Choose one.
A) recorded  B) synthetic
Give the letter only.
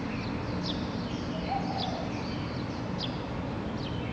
A